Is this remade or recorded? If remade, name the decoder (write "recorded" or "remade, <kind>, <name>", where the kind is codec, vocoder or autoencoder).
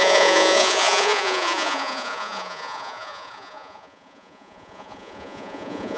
remade, vocoder, Vocos